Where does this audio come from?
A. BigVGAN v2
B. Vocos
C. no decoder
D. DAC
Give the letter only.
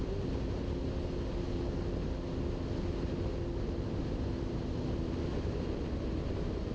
C